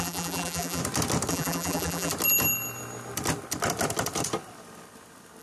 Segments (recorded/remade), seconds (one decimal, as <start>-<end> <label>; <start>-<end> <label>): 0.0-0.8 remade; 0.8-1.3 recorded; 1.3-2.1 remade; 2.1-5.4 recorded